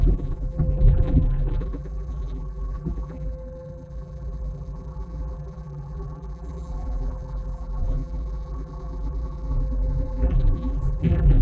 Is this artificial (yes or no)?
yes